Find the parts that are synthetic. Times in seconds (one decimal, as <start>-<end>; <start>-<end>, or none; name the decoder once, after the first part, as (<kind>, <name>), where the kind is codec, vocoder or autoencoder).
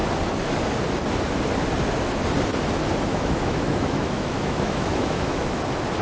3.1-5.6 (autoencoder, DAC-VAE)